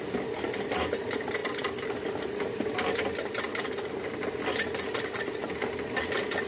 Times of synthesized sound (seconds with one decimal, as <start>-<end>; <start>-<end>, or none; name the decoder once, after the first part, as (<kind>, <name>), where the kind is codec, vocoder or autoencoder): none

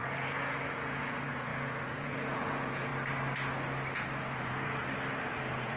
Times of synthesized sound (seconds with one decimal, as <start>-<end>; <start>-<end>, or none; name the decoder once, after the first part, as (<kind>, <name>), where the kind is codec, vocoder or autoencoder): 0.0-2.9 (vocoder, Vocos); 4.2-4.8; 5.3-5.8

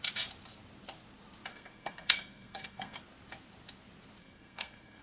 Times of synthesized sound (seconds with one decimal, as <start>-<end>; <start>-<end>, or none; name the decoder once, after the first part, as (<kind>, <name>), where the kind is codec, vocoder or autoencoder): 1.5-3.0 (codec, SNAC); 4.2-5.0

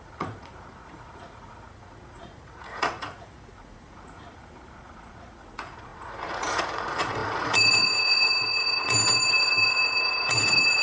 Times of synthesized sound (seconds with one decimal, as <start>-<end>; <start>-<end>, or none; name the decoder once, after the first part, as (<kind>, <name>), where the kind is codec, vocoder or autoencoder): 0.0-10.8 (vocoder, Vocos)

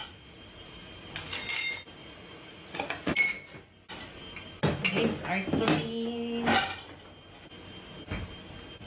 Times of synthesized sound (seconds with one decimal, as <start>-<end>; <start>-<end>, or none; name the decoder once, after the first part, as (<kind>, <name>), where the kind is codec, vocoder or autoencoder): 0.0-0.9 (vocoder, Vocos); 2.0-3.1